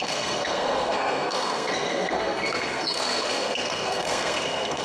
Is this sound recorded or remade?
remade